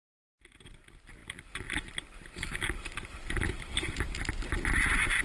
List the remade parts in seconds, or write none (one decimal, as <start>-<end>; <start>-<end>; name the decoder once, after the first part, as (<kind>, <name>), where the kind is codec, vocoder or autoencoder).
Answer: 1.2-4.3 (vocoder, BigVGAN v2)